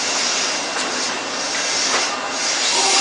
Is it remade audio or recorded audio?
recorded